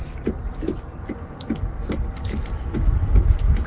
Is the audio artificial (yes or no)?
no